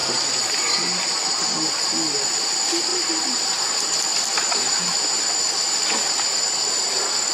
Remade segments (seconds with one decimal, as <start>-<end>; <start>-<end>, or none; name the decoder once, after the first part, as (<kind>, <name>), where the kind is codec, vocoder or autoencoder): 0.0-0.5 (vocoder, BigVGAN v2); 2.9-3.6; 4.1-5.4